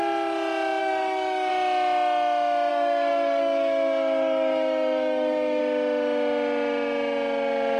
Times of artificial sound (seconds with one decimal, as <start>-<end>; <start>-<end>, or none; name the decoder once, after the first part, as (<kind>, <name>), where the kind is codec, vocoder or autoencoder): 0.8-1.5 (codec, DAC); 2.7-5.6

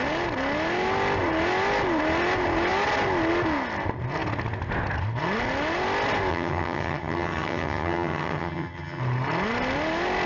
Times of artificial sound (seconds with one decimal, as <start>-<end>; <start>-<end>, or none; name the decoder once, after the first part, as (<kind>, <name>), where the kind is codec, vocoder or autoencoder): 6.3-9.0 (vocoder, HiFi-GAN)

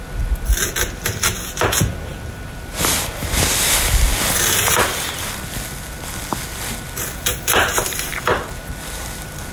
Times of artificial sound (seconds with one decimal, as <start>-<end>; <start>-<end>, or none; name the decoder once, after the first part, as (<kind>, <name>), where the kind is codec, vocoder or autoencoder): none

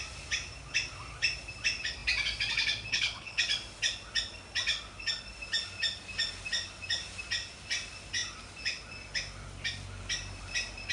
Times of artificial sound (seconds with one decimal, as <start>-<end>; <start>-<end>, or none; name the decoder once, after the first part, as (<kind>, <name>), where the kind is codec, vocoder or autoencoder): 2.9-3.4 (codec, HILCodec)

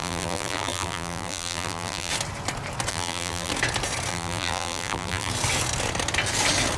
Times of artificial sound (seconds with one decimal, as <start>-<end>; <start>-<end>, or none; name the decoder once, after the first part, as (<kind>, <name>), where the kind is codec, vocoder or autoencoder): 0.0-2.1 (vocoder, BigVGAN v2); 2.9-3.5; 4.1-5.3